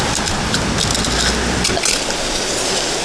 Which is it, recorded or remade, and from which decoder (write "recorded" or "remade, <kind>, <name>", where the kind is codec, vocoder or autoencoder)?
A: recorded